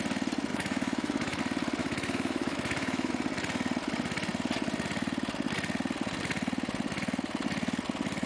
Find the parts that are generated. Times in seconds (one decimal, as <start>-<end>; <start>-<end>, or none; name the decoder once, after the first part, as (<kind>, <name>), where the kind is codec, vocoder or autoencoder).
0.5-1.4 (autoencoder, DAC-VAE); 1.8-3.1